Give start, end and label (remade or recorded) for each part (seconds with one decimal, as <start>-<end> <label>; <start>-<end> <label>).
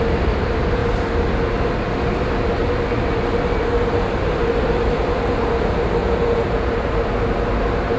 0.0-6.0 recorded; 6.0-6.7 remade; 6.7-8.0 recorded